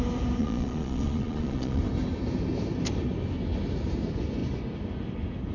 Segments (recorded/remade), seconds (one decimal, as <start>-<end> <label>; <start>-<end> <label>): 0.0-0.4 recorded; 0.4-1.8 remade; 1.8-5.5 recorded